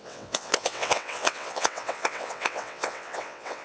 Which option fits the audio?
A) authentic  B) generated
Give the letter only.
B